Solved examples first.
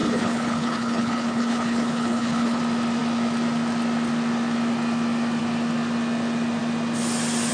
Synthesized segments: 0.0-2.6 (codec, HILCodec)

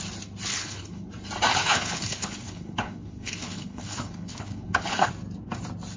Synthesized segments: 0.5-1.1 (codec, HILCodec); 1.5-5.1